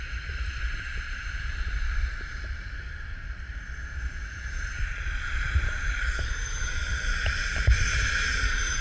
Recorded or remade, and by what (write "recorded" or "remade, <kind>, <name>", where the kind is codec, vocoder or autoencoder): remade, vocoder, BigVGAN v2